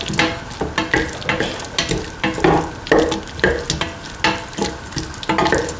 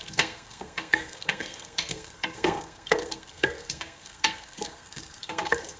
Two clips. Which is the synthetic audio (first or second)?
second